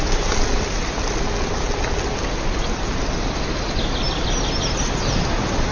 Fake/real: real